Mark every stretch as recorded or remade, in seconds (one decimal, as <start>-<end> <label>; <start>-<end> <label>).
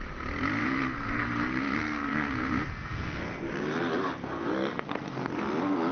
0.0-0.6 recorded; 0.6-3.4 remade; 3.4-4.2 recorded; 4.2-5.3 remade; 5.3-5.9 recorded